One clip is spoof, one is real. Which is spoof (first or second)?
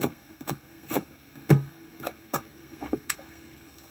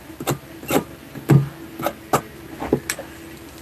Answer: first